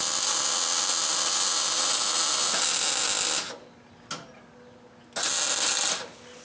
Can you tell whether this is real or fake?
real